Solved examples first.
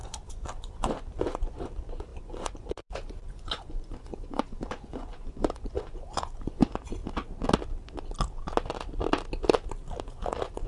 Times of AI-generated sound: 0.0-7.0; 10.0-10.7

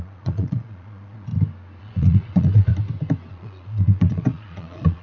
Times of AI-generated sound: 0.0-1.3; 1.8-2.7; 3.3-5.0

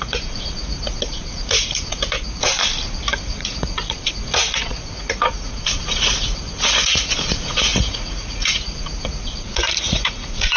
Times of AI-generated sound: 0.0-2.5; 3.1-10.6

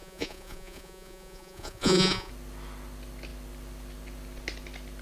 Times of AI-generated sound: 0.0-2.3

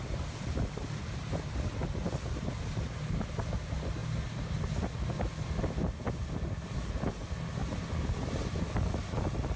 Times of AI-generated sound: none

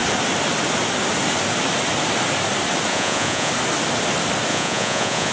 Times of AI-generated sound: 2.9-3.5; 4.5-5.3